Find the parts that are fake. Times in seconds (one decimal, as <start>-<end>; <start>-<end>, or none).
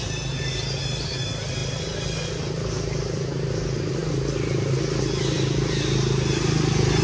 none